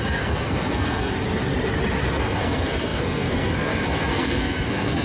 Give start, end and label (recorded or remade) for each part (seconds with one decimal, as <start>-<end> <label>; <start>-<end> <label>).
0.0-1.1 remade; 1.1-2.2 recorded; 2.2-5.0 remade